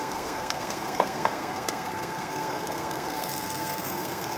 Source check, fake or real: fake